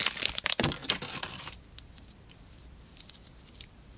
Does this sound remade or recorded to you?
recorded